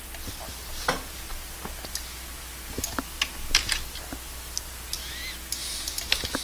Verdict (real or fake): real